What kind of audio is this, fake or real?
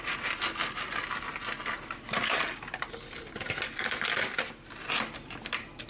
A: real